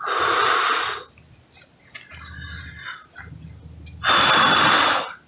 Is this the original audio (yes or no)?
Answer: yes